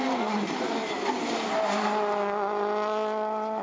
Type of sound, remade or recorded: recorded